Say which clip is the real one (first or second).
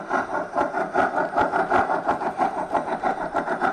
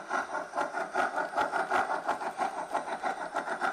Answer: second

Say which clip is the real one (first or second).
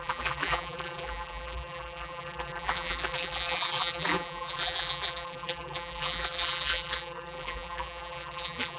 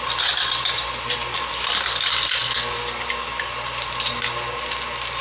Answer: second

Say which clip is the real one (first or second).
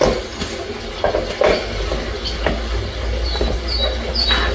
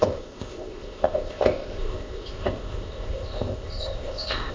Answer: first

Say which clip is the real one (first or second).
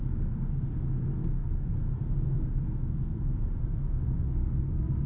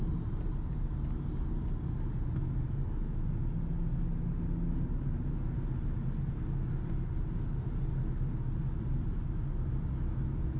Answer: second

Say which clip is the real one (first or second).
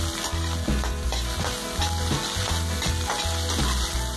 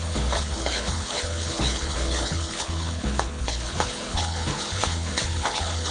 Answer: first